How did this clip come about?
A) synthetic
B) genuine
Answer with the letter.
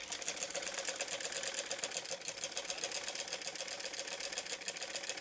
B